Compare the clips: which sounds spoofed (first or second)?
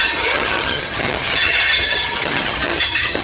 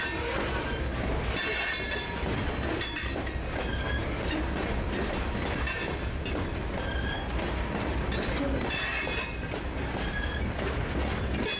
first